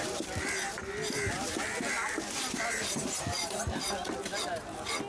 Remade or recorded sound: recorded